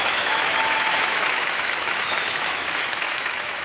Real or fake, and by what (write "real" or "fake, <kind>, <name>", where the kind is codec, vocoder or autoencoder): fake, autoencoder, DAC-VAE